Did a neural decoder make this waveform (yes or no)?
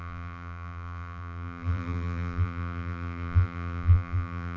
yes